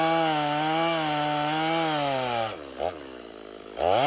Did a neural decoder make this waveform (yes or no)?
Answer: no